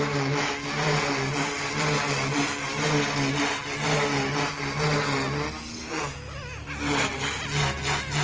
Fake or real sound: real